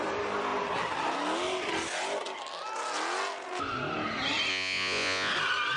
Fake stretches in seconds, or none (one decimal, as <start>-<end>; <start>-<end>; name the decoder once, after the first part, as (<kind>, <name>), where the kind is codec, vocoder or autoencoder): 4.5-5.3 (vocoder, Vocos)